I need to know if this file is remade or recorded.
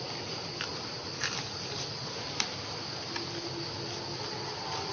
recorded